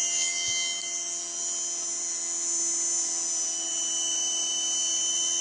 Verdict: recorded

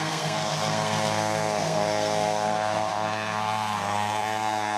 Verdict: remade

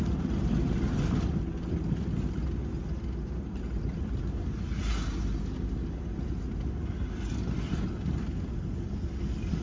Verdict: recorded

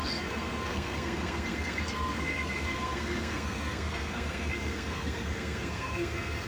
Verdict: remade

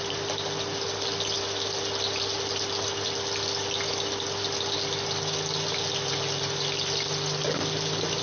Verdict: recorded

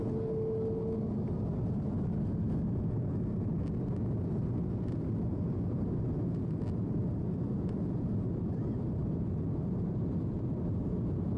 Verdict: recorded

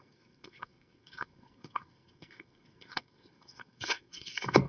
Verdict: remade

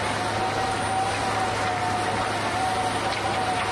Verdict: recorded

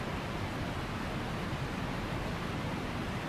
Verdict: recorded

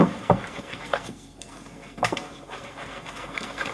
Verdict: remade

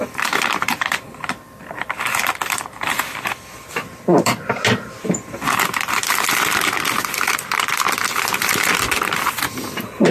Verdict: remade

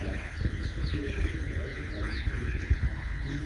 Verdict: remade